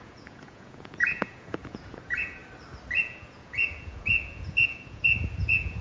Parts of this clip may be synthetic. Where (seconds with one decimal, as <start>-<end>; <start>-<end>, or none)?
0.0-2.4; 3.0-5.8